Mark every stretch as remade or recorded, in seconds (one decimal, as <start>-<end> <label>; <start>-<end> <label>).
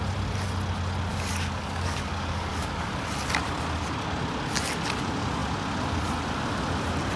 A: 0.0-1.1 recorded; 1.1-2.9 remade; 2.9-7.2 recorded